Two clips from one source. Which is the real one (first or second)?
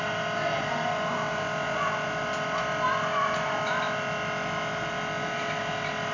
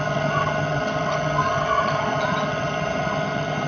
first